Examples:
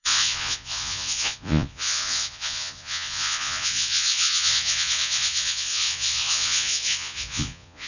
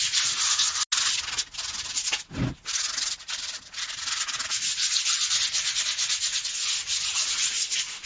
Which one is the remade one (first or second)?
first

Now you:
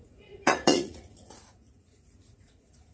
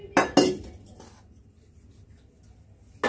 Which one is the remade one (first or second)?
first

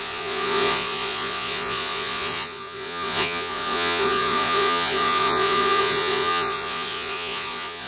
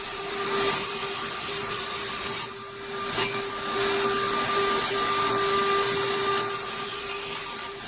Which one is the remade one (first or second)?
first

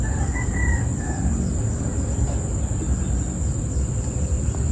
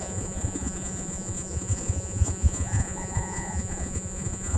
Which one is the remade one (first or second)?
second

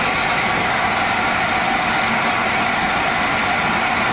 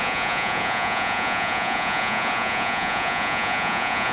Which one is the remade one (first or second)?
second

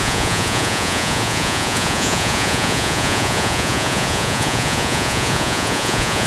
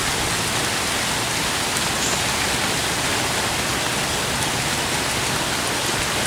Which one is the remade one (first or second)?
first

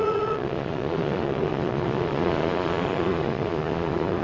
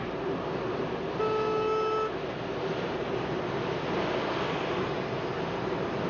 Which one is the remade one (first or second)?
first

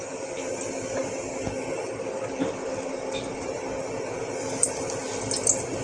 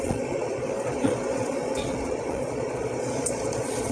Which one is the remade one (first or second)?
second